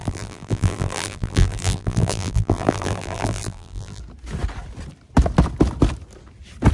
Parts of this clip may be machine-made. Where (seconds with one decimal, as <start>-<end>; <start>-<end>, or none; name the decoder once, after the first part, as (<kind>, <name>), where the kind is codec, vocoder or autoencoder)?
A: 0.0-4.0 (vocoder, BigVGAN v2)